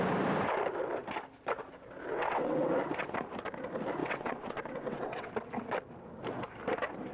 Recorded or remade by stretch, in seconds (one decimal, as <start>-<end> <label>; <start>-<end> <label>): 0.0-2.1 recorded; 2.1-2.7 remade; 2.7-4.0 recorded; 4.0-5.3 remade; 5.3-7.1 recorded